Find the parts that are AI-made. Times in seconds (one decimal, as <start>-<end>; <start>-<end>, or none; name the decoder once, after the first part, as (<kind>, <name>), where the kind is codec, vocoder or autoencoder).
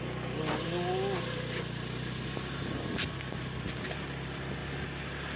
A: none